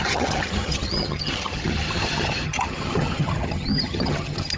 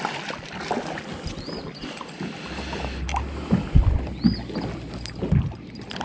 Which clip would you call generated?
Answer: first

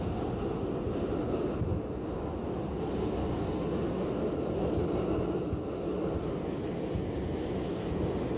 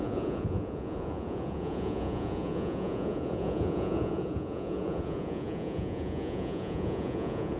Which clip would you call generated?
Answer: second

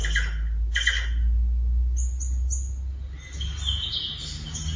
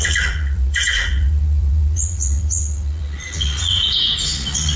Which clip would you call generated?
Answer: second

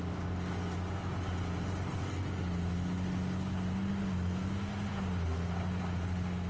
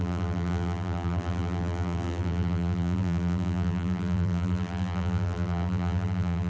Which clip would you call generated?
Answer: second